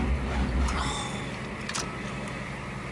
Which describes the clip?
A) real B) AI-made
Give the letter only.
A